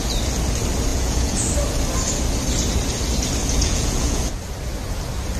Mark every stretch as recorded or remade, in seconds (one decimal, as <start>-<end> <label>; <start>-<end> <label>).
0.0-0.9 recorded; 0.9-1.4 remade; 1.4-3.4 recorded; 3.4-4.2 remade; 4.2-5.4 recorded